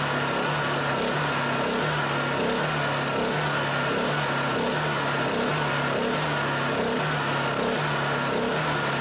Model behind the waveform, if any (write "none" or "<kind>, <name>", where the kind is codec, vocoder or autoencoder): none